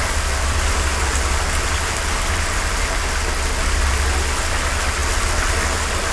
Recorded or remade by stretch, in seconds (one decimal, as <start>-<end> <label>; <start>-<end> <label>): 0.0-6.1 recorded

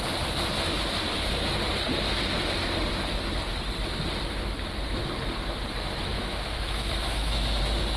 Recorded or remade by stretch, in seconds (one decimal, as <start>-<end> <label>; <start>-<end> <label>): 0.0-6.1 recorded; 6.1-7.6 remade; 7.6-8.0 recorded

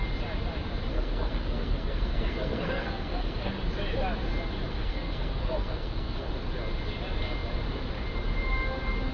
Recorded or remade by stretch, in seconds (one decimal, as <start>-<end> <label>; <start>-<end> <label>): 0.0-0.9 recorded; 0.9-3.5 remade; 3.5-4.7 recorded; 4.7-6.3 remade; 6.3-9.1 recorded

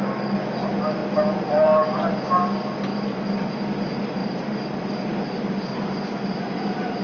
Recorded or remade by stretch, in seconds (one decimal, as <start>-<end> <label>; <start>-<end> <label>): 0.0-1.0 recorded; 1.0-2.1 remade; 2.1-2.9 recorded; 2.9-3.5 remade; 3.5-4.2 recorded; 4.2-6.1 remade; 6.1-7.0 recorded

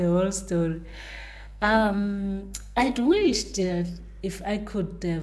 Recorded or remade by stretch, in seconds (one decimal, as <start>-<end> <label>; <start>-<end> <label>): 0.0-0.9 recorded; 0.9-4.0 remade; 4.0-5.2 recorded

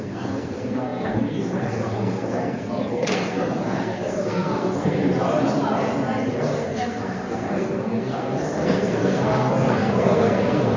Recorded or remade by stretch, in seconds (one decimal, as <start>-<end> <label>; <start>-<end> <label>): 0.0-5.0 remade; 5.0-6.3 recorded; 6.3-10.8 remade

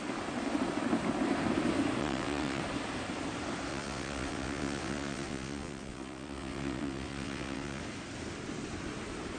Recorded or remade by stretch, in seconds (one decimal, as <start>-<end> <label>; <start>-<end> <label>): 0.0-2.0 recorded; 2.0-2.6 remade; 2.6-3.7 recorded; 3.7-7.8 remade; 7.8-9.4 recorded

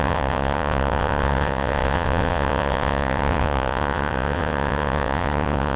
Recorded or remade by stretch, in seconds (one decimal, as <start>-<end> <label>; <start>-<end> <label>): 0.0-5.8 remade